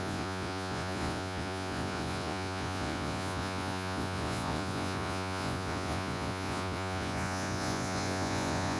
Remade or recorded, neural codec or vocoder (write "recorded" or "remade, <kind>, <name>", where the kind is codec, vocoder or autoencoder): remade, vocoder, Vocos